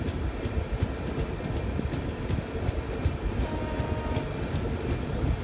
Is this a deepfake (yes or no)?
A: no